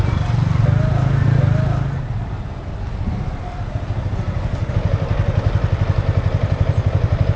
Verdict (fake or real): real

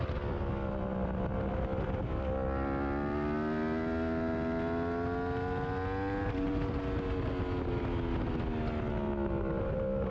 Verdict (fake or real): real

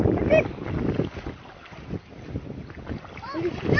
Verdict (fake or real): real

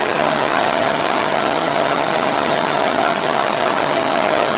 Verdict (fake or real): fake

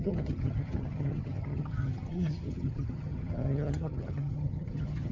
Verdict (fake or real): fake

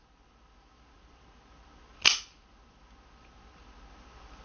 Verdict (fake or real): real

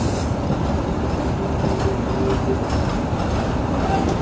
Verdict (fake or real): real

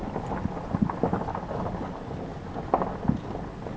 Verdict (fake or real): real